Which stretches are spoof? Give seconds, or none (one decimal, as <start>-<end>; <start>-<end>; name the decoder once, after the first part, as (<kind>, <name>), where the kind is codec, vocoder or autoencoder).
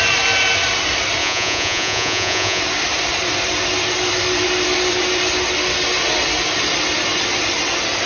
1.2-2.6 (vocoder, Vocos)